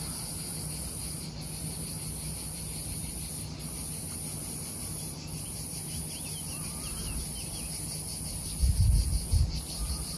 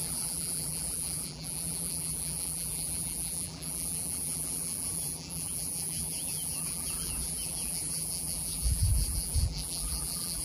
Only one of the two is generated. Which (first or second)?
second